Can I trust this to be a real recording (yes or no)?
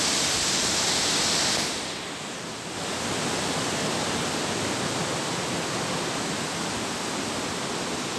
yes